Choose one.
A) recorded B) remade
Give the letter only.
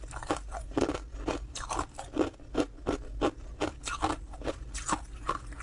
A